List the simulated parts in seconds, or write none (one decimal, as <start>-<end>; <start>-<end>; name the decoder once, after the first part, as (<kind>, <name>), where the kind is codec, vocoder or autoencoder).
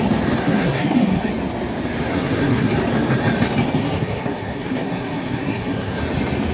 0.4-1.3 (codec, SNAC); 2.1-2.7; 3.8-6.0